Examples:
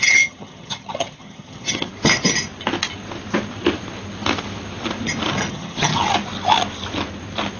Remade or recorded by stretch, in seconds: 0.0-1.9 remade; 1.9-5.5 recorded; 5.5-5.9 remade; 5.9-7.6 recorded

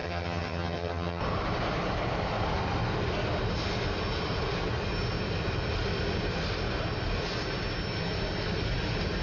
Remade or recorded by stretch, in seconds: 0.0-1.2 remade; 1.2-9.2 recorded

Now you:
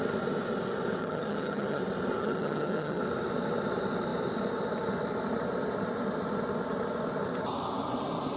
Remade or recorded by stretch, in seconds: 0.0-1.0 recorded; 1.0-1.8 remade; 1.8-2.2 recorded; 2.2-3.0 remade; 3.0-8.4 recorded